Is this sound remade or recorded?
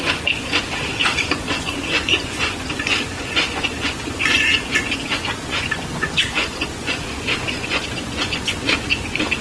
remade